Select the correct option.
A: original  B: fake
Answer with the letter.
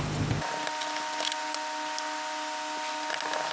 A